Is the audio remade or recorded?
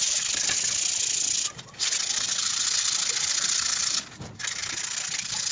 recorded